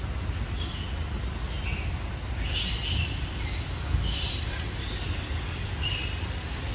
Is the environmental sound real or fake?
real